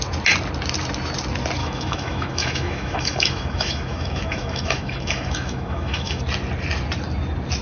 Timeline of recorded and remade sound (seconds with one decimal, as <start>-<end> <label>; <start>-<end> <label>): 0.0-1.6 recorded; 1.6-6.2 remade; 6.2-7.6 recorded